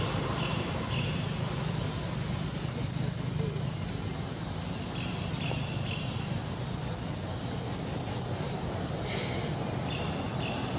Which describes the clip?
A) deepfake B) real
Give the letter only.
B